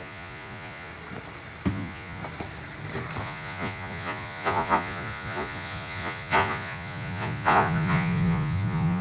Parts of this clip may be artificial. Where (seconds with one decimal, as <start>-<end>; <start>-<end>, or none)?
0.0-0.9; 1.7-2.2; 3.2-9.0